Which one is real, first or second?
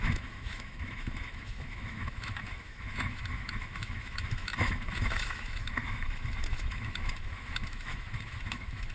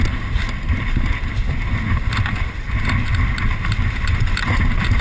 second